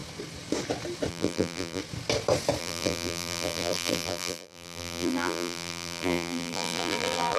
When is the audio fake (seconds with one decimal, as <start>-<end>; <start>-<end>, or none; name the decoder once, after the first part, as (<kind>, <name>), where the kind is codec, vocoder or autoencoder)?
1.1-1.8 (vocoder, BigVGAN v2); 2.6-7.4